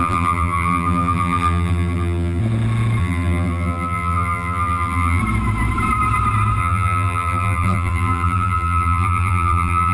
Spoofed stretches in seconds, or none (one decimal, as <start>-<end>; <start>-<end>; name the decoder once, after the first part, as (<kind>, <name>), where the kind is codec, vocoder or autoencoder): 0.0-2.4 (vocoder, BigVGAN v2); 3.0-5.2; 6.6-9.9